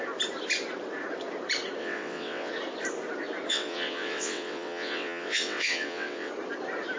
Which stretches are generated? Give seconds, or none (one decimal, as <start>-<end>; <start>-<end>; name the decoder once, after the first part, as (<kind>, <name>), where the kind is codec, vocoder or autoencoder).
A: 1.8-2.5 (vocoder, WaveNeXt); 3.5-6.3

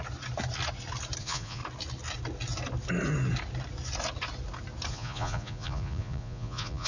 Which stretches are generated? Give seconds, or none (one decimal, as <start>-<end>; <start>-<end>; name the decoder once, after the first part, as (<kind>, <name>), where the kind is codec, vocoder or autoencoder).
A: 1.2-1.6 (vocoder, Vocos); 4.9-6.9

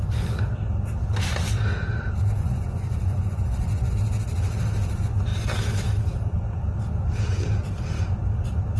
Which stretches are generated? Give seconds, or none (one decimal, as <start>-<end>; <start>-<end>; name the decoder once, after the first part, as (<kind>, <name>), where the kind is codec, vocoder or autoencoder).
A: 2.4-3.9 (vocoder, Vocos)